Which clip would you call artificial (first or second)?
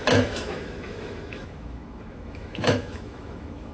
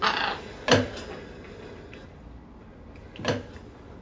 first